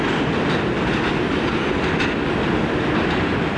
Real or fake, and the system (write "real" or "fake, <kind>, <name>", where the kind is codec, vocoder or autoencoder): real